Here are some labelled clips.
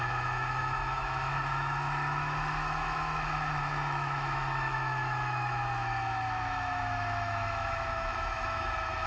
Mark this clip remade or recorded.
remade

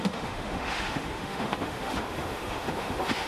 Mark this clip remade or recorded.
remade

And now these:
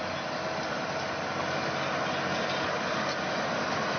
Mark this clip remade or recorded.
recorded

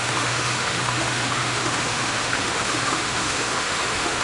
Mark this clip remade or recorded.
remade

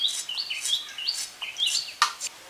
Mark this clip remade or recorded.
recorded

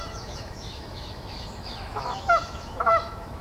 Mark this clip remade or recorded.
remade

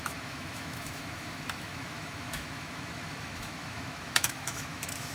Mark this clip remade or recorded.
remade